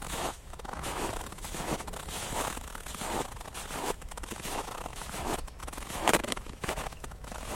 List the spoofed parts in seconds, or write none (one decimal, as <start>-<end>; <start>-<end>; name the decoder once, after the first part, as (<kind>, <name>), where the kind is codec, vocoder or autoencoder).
0.0-2.7 (autoencoder, DAC-VAE); 3.8-7.6